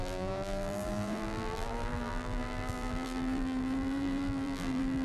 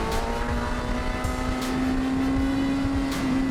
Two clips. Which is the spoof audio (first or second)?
first